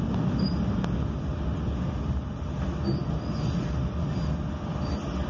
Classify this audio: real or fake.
real